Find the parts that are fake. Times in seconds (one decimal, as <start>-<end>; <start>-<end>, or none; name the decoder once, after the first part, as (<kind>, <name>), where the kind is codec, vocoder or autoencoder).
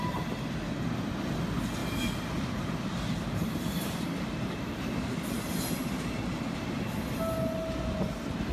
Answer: 1.8-6.8 (vocoder, BigVGAN v2)